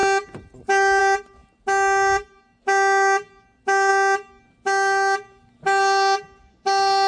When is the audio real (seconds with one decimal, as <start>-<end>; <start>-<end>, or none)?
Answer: 0.0-7.1

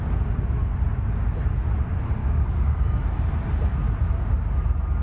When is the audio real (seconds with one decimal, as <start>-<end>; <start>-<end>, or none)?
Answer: 0.0-2.2; 3.0-5.0

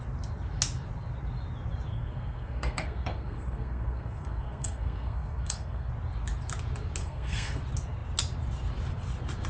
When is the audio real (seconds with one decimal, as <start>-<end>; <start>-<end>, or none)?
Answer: 0.0-1.9; 5.9-7.0; 7.6-9.5

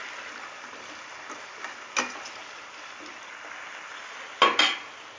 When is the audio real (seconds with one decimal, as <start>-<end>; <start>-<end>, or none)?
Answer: 0.0-5.2

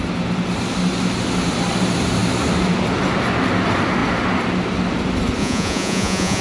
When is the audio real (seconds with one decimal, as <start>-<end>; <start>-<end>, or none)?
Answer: 0.0-5.4

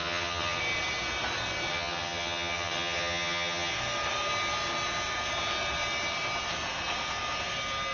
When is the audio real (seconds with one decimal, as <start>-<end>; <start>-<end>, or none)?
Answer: 0.6-1.7; 3.7-7.9